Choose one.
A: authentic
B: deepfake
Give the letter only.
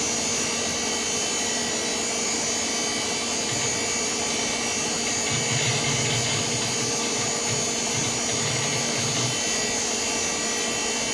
A